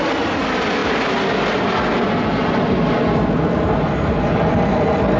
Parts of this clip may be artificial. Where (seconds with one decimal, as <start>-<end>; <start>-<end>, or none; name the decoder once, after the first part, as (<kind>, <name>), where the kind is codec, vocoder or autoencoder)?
none